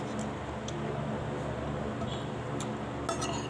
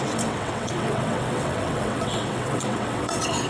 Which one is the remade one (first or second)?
second